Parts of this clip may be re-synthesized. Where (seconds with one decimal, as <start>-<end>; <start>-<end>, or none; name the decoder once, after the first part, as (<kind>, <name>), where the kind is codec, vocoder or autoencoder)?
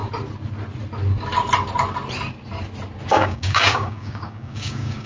3.1-5.1 (codec, DAC)